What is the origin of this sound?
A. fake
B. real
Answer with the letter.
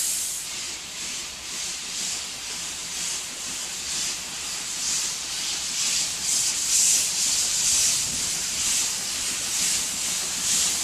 A